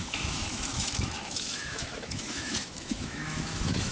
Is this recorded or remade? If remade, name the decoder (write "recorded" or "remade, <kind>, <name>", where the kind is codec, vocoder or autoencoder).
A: remade, autoencoder, DAC-VAE